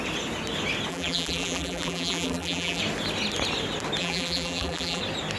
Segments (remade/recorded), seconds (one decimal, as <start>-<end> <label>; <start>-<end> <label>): 0.0-0.9 recorded; 0.9-2.8 remade; 2.8-4.0 recorded; 4.0-5.0 remade; 5.0-5.4 recorded